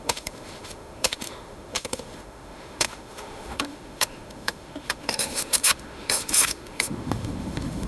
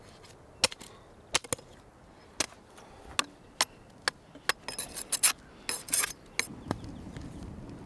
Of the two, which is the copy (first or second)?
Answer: first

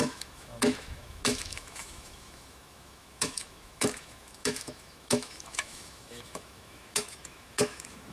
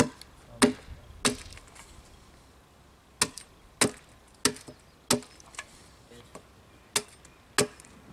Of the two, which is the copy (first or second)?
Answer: first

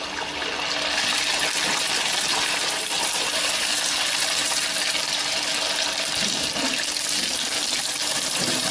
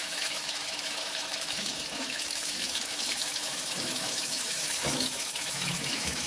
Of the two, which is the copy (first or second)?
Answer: second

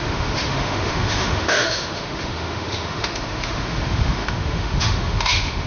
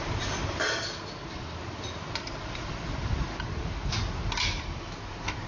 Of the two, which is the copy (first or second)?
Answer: first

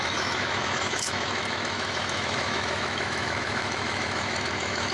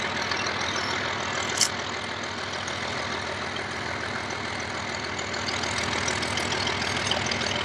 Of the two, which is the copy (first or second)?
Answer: first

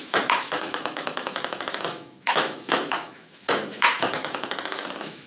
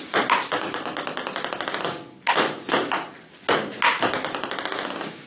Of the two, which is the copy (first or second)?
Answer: first